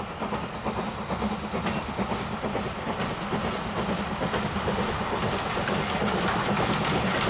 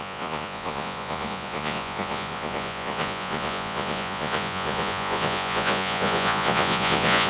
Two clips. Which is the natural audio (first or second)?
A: first